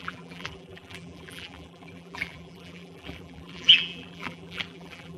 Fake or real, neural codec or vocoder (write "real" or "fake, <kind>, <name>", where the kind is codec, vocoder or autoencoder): fake, vocoder, BigVGAN v2